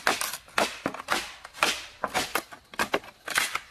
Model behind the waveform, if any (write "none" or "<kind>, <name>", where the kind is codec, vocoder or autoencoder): none